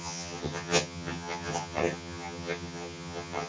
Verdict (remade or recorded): remade